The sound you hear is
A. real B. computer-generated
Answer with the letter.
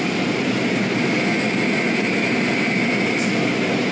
A